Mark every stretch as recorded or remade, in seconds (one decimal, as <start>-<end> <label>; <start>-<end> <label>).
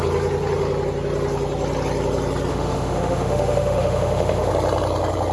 0.0-2.5 recorded; 2.5-4.5 remade; 4.5-5.3 recorded